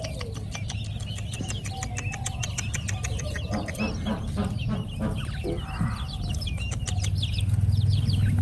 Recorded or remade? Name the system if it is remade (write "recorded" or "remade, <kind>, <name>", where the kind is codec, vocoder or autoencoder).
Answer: recorded